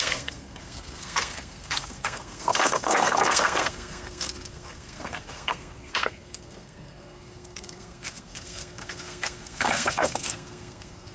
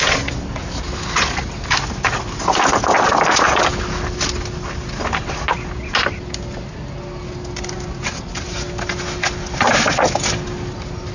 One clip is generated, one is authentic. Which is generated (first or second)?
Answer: first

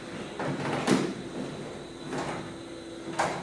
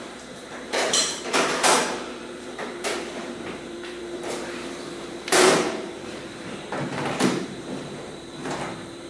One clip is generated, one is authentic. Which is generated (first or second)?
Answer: second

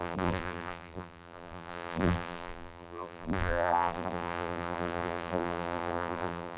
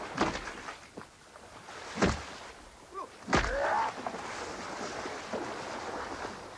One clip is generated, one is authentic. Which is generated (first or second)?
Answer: first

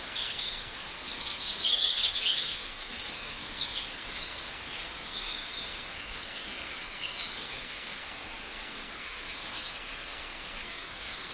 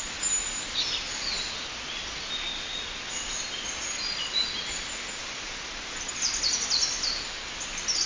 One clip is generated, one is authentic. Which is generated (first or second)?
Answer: first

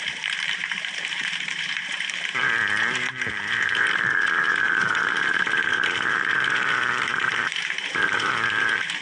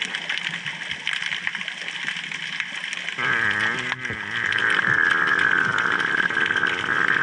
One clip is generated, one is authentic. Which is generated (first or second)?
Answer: first